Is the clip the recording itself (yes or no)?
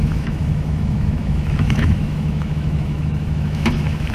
no